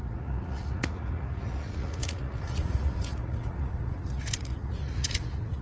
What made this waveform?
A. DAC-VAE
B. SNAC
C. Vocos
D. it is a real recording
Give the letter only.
C